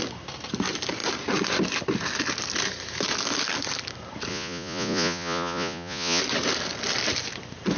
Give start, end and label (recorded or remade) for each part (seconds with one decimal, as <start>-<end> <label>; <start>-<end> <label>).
0.0-4.3 recorded; 4.3-6.2 remade; 6.2-7.8 recorded